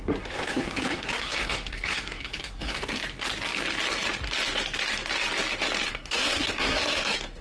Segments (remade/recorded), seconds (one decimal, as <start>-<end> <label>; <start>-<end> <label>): 0.0-3.0 remade; 3.0-5.9 recorded; 5.9-7.4 remade